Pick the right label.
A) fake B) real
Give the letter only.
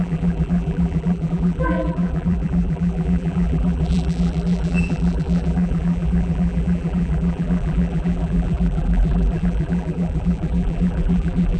A